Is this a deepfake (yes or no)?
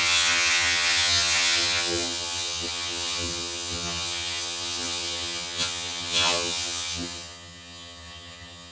yes